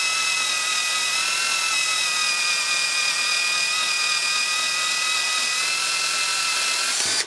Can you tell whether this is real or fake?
real